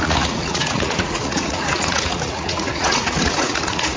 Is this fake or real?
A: fake